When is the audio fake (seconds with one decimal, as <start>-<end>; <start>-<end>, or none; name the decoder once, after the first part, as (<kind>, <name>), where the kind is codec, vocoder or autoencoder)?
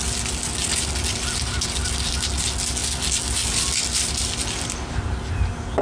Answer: none